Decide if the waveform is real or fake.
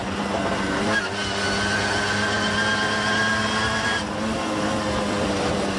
real